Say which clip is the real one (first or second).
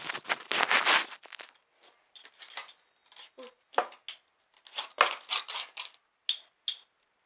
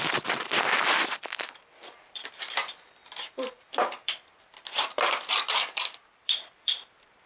first